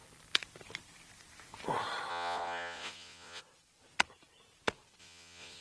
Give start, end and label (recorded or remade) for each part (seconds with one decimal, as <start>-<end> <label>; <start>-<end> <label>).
0.0-2.1 recorded; 2.1-3.4 remade; 3.4-5.0 recorded; 5.0-5.6 remade